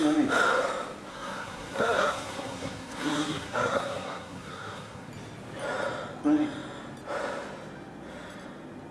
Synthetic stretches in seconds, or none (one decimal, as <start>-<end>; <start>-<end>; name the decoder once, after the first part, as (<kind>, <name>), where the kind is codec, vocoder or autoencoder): 1.1-5.1 (codec, SNAC)